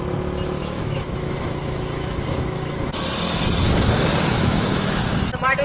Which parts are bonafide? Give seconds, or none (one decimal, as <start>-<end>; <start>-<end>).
0.0-0.6; 2.9-4.3; 5.0-5.6